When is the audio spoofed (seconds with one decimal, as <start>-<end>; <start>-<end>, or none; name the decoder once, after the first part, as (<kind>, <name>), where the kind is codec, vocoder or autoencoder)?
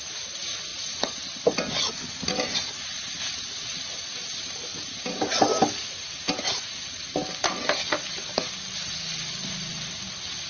none